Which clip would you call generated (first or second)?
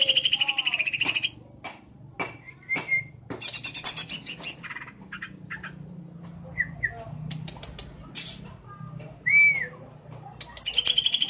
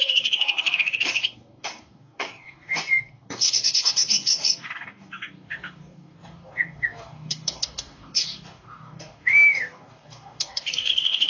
second